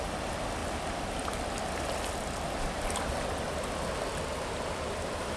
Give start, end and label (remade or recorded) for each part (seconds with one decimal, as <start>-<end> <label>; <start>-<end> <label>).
0.0-5.4 recorded